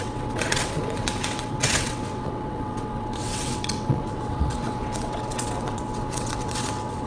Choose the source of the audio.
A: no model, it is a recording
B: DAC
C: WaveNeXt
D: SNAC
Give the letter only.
C